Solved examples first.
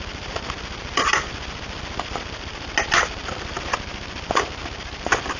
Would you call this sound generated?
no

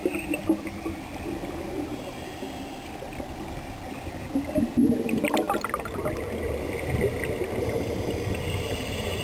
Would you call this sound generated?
no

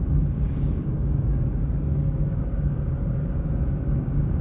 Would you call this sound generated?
yes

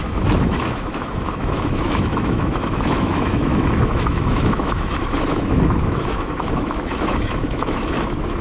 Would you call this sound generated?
yes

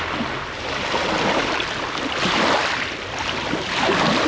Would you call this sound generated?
no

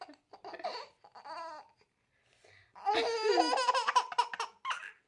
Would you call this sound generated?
no